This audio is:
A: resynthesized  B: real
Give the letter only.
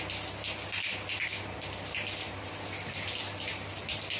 B